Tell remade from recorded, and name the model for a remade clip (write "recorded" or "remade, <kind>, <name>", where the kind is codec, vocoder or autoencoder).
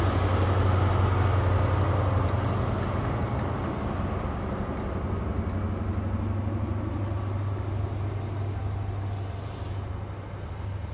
recorded